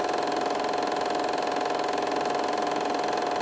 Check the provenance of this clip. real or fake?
real